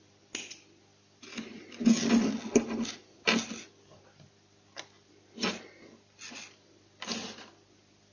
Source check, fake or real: real